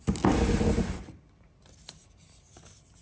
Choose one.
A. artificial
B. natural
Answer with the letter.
B